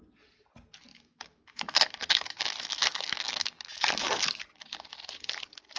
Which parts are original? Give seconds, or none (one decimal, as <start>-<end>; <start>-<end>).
0.0-0.9; 4.4-5.8